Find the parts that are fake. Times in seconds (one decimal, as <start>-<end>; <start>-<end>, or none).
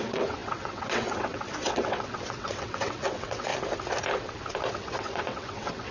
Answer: 0.0-3.5; 4.7-5.9